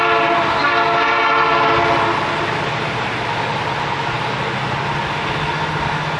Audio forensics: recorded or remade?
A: recorded